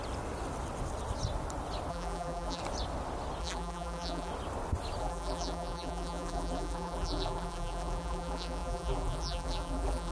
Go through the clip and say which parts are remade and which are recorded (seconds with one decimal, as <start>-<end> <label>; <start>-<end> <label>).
0.0-1.9 recorded; 1.9-2.6 remade; 2.6-3.4 recorded; 3.4-4.3 remade; 4.3-5.0 recorded; 5.0-10.1 remade